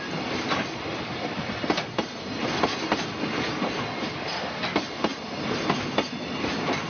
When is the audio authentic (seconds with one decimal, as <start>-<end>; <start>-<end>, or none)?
0.0-6.9